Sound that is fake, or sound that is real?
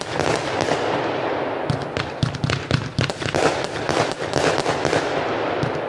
real